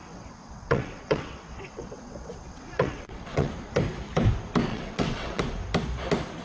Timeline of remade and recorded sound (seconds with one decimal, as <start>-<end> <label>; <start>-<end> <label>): 0.0-3.5 remade; 3.5-4.7 recorded; 4.7-5.4 remade; 5.4-6.4 recorded